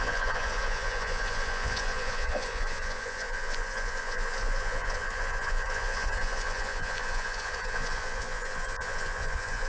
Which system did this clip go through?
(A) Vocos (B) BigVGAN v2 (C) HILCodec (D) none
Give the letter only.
A